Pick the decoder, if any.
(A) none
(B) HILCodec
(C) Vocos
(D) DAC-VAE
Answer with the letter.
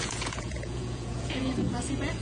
C